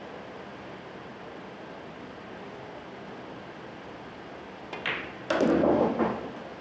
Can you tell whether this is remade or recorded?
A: recorded